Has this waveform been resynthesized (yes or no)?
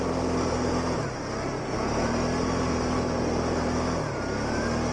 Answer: no